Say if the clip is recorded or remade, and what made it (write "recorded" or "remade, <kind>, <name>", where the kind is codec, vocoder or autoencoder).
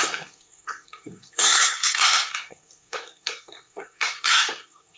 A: remade, codec, SNAC